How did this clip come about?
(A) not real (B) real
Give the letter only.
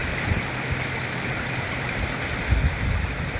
B